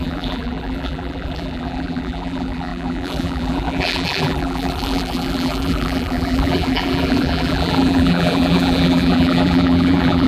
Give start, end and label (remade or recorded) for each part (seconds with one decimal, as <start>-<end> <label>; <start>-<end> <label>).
0.0-10.3 remade